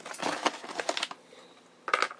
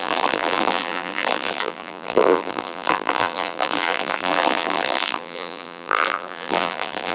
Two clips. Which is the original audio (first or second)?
first